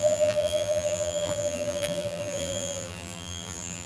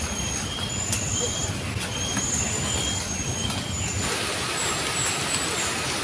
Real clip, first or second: second